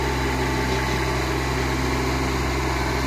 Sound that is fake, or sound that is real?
real